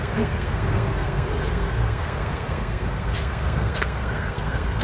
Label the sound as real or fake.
fake